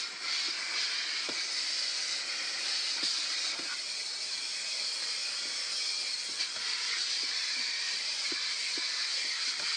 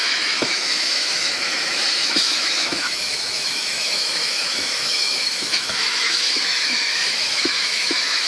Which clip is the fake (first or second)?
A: second